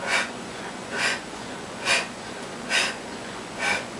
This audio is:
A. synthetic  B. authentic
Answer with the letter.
A